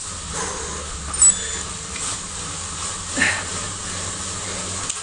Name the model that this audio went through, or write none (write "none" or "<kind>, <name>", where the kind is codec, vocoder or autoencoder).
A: none